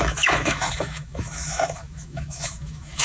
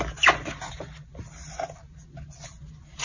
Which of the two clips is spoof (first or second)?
first